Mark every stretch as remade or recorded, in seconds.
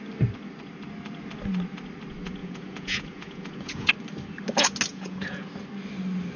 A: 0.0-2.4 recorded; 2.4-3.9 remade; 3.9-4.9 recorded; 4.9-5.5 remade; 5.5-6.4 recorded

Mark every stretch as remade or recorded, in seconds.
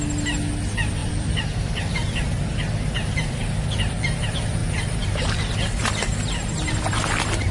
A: 0.0-1.0 recorded; 1.0-2.7 remade; 2.7-4.6 recorded; 4.6-5.5 remade; 5.5-7.5 recorded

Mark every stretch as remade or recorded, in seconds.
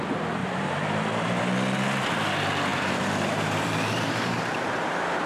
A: 0.0-0.4 recorded; 0.4-1.4 remade; 1.4-2.7 recorded; 2.7-4.4 remade; 4.4-5.3 recorded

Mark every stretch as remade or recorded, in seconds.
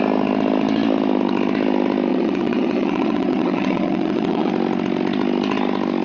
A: 0.0-2.1 recorded; 2.1-4.5 remade; 4.5-6.0 recorded